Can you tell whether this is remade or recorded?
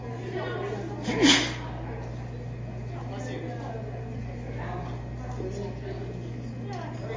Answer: recorded